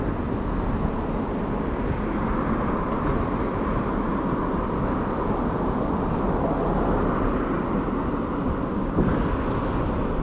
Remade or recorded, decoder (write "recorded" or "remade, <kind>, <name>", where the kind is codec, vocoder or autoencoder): recorded